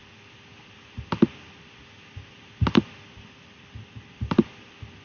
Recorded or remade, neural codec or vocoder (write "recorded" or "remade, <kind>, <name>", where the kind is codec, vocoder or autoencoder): remade, vocoder, BigVGAN v2